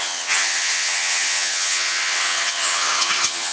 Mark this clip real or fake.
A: fake